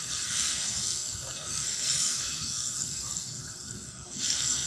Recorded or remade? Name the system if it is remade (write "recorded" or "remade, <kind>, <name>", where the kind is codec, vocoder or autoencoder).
remade, codec, SNAC